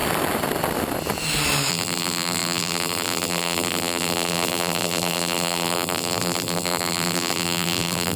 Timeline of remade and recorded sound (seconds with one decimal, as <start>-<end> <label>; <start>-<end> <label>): 0.0-1.7 recorded; 1.7-8.2 remade